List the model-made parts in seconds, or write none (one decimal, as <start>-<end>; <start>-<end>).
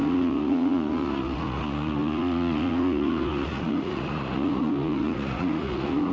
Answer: 0.0-6.1